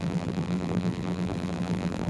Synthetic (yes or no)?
yes